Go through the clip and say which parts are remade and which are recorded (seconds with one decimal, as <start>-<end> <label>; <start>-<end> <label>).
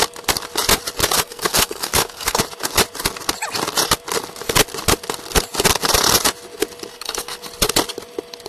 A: 0.0-1.0 recorded; 1.0-2.4 remade; 2.4-6.9 recorded; 6.9-7.4 remade; 7.4-8.5 recorded